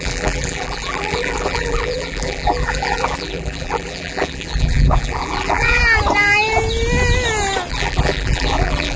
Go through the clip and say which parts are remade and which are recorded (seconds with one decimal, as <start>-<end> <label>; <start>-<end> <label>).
0.0-5.8 remade; 5.8-7.7 recorded; 7.7-9.0 remade